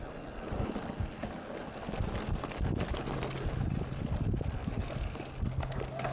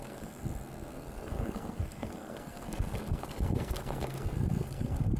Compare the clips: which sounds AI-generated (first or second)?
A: second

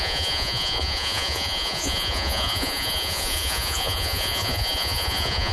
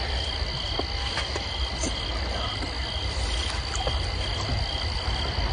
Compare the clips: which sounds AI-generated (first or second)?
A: first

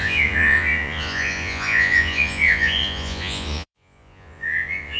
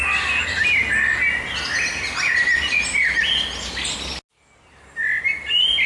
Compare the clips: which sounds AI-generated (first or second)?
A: first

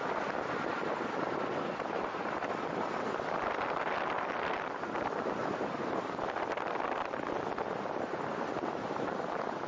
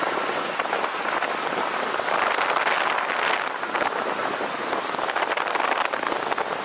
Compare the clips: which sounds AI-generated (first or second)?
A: first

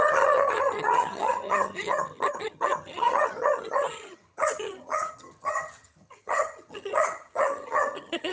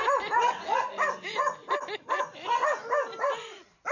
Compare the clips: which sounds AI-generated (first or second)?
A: first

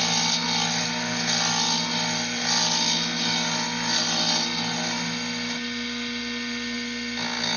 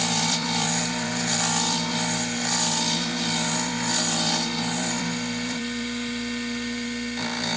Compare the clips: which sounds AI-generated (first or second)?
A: second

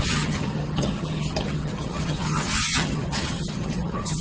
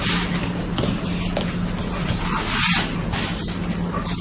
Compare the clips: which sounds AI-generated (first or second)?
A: first